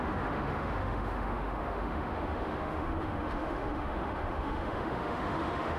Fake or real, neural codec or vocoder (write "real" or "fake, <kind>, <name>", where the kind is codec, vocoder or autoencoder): fake, autoencoder, DAC-VAE